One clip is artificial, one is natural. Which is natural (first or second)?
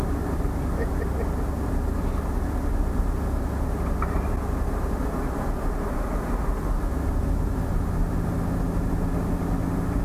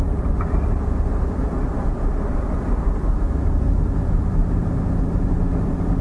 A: first